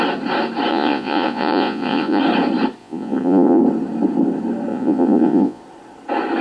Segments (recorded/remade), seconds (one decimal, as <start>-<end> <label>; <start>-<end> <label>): 0.0-0.7 recorded; 0.7-2.2 remade; 2.2-2.8 recorded; 2.8-3.6 remade; 3.6-4.7 recorded; 4.7-5.6 remade; 5.6-6.4 recorded